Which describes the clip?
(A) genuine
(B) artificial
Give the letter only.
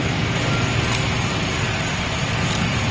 A